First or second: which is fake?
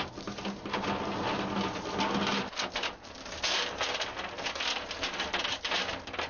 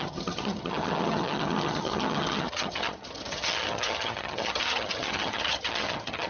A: second